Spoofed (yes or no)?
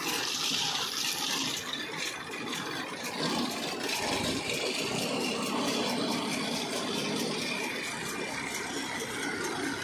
no